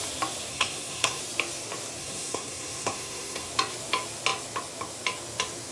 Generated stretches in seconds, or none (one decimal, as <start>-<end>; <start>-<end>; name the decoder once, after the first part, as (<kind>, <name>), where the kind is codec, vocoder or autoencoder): 0.5-1.2 (codec, SNAC); 2.0-3.5